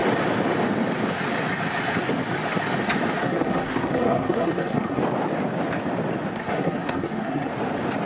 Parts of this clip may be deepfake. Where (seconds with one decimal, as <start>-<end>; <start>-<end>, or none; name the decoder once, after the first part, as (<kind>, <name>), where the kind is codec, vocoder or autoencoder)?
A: 3.2-5.0 (codec, SNAC); 6.3-7.5